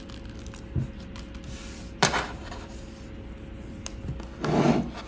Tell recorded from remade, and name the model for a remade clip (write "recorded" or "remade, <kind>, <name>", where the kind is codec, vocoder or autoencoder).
recorded